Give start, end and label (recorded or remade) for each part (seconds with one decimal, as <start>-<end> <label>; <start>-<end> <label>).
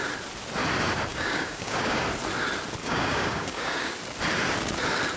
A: 0.0-1.1 recorded; 1.1-2.0 remade; 2.0-2.8 recorded; 2.8-3.9 remade; 3.9-5.2 recorded